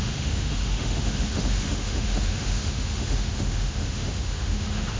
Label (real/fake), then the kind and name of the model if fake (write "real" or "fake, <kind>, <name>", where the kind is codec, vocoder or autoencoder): fake, autoencoder, DAC-VAE